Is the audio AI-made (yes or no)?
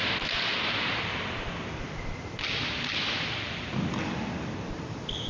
yes